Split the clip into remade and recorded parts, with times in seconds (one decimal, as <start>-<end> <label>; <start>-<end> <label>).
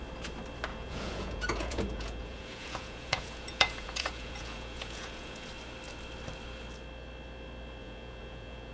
0.0-0.7 recorded; 0.7-5.5 remade; 5.5-7.8 recorded; 7.8-8.7 remade